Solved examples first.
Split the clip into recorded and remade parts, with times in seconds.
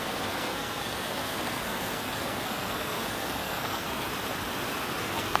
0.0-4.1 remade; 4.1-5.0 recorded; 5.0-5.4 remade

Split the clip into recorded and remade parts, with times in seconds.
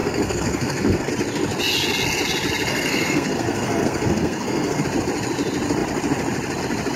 0.0-1.1 remade; 1.1-2.7 recorded; 2.7-4.8 remade; 4.8-7.0 recorded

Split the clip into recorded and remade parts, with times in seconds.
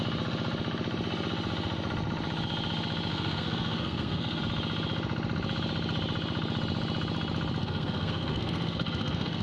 0.0-3.1 recorded; 3.1-4.4 remade; 4.4-7.6 recorded; 7.6-9.4 remade